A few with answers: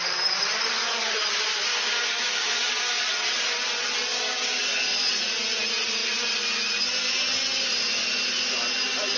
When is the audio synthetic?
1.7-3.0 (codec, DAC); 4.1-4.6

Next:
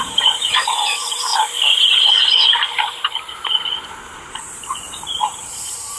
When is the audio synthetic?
0.0-1.3 (vocoder, BigVGAN v2); 4.9-6.0